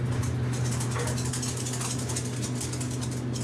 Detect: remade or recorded recorded